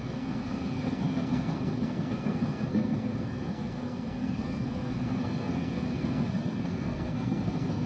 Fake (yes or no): yes